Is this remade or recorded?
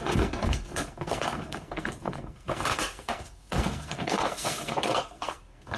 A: remade